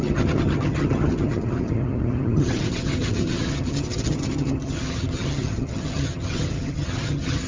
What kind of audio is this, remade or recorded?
remade